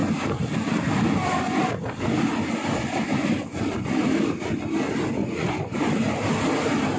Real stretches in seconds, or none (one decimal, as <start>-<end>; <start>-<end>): 0.0-5.2; 5.9-7.0